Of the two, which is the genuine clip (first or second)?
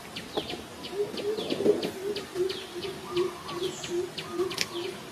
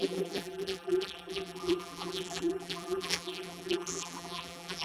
first